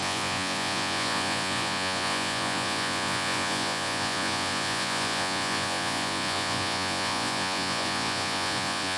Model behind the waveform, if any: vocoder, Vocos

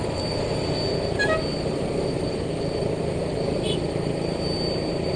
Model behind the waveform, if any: none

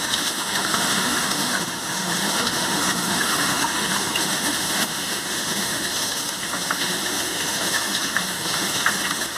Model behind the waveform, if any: autoencoder, DAC-VAE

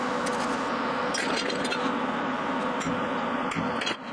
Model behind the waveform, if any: none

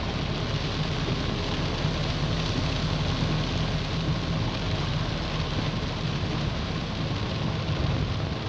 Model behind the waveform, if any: none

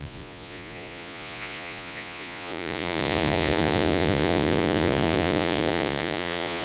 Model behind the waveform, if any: vocoder, Vocos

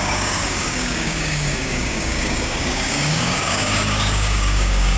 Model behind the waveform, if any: codec, DAC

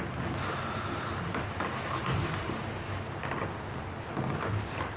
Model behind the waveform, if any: none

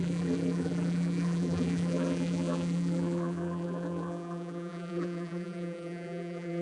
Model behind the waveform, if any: vocoder, BigVGAN v2